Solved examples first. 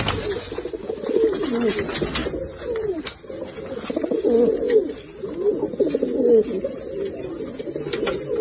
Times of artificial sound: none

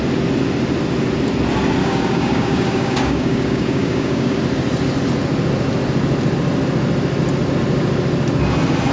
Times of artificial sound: 1.8-4.4 (codec, DAC)

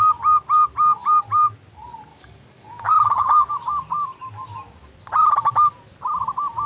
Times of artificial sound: 2.1-3.5 (codec, DAC)

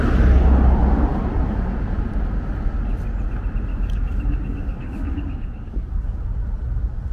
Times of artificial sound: 3.7-5.9 (codec, DAC)

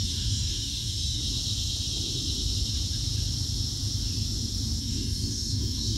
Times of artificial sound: 0.0-1.2 (codec, DAC); 4.8-6.0

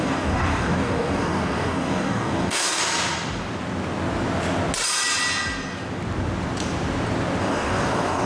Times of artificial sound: 0.0-2.8 (codec, DAC); 7.4-8.3